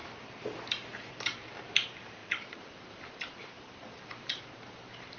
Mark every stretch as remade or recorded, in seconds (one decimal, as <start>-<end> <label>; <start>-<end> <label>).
0.0-1.6 recorded; 1.6-5.2 remade